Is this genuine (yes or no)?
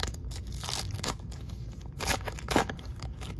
no